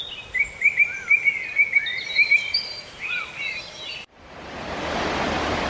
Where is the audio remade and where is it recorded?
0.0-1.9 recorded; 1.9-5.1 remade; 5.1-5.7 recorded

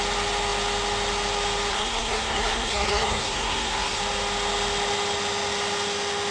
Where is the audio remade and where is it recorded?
0.0-1.7 recorded; 1.7-4.0 remade; 4.0-6.3 recorded

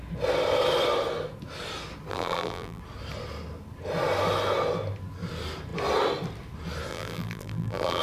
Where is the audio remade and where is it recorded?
0.0-2.1 recorded; 2.1-2.8 remade; 2.8-6.9 recorded; 6.9-8.0 remade

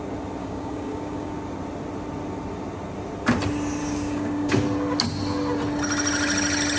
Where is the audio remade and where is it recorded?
0.0-0.4 recorded; 0.4-1.3 remade; 1.3-3.8 recorded; 3.8-4.5 remade; 4.5-6.8 recorded